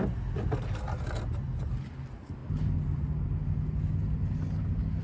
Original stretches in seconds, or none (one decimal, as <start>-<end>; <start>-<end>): 0.0-5.0